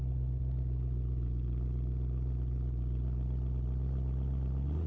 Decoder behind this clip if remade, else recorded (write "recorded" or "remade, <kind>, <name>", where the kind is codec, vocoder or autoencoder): recorded